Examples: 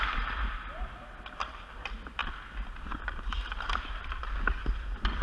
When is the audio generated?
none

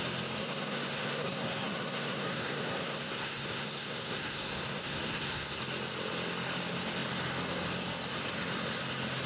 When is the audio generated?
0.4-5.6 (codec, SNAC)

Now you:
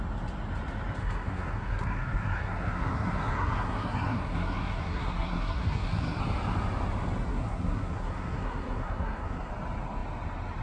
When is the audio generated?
1.0-6.2 (codec, SNAC); 7.3-9.5

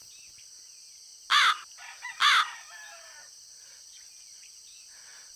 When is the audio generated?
none

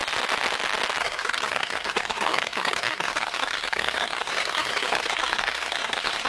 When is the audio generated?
1.0-6.3 (codec, SNAC)